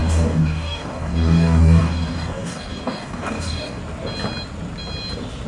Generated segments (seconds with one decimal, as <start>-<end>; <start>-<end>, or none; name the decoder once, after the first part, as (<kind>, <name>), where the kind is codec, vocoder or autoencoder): 0.0-3.8 (codec, DAC)